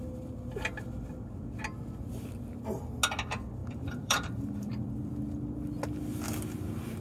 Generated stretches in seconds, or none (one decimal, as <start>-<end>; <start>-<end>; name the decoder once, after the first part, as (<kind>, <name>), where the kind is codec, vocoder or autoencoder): 3.6-5.1 (vocoder, BigVGAN v2)